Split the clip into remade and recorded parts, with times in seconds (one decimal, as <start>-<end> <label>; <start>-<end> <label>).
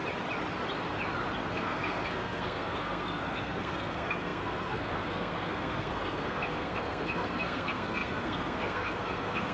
0.0-1.5 recorded; 1.5-9.5 remade